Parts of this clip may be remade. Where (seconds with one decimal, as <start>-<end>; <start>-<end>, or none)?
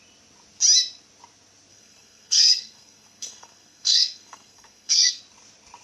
1.7-5.2